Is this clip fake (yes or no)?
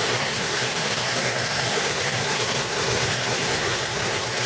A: yes